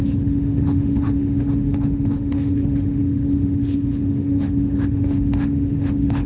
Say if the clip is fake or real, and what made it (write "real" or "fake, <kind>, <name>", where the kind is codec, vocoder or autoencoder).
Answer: fake, autoencoder, DAC-VAE